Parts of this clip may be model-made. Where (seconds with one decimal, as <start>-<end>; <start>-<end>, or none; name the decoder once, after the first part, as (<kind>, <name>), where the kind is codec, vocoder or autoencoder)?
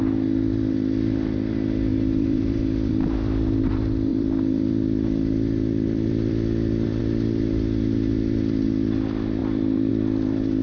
1.9-2.6 (vocoder, BigVGAN v2); 4.1-7.0; 9.4-9.9